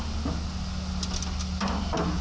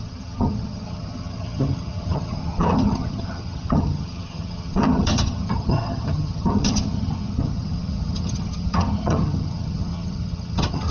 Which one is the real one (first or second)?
first